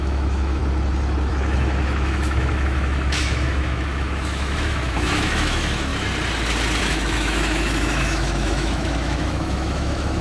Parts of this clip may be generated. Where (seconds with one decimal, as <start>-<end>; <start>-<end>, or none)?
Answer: 0.0-0.6; 1.3-5.9; 6.8-10.2